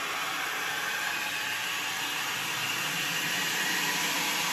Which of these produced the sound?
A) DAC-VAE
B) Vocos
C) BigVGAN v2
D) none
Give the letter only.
D